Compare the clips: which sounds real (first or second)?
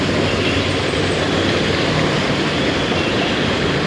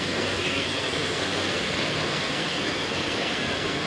first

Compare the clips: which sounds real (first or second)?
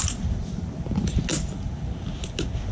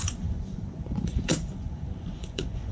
first